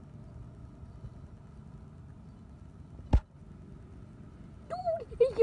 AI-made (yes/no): no